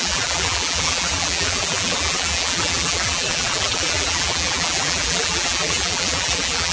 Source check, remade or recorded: remade